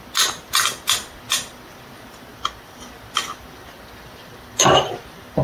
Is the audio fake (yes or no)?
no